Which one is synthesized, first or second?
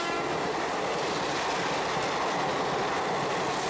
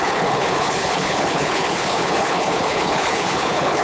second